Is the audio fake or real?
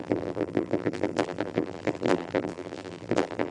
fake